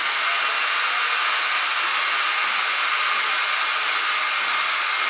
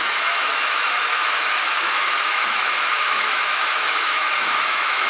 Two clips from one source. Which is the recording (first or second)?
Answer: first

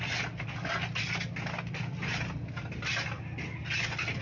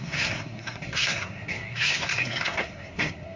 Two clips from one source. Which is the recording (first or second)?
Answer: first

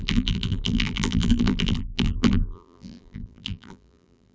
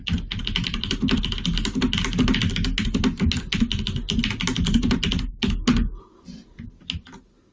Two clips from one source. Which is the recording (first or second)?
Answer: second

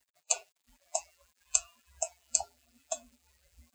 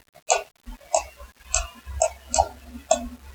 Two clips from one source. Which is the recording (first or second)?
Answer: second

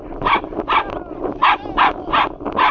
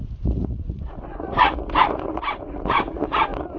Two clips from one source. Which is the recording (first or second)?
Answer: first